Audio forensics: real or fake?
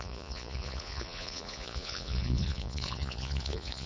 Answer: fake